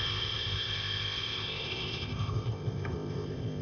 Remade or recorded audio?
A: remade